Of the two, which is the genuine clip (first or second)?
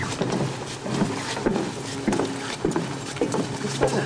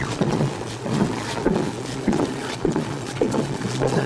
first